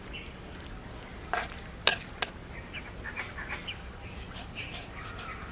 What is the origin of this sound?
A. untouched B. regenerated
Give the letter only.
A